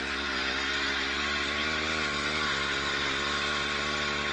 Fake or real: real